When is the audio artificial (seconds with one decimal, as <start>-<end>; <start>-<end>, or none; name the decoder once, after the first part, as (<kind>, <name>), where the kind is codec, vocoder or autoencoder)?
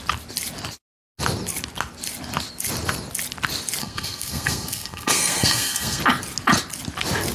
3.8-6.0 (codec, SNAC)